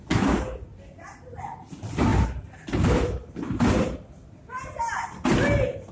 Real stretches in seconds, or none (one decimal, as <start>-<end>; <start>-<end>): 0.0-5.9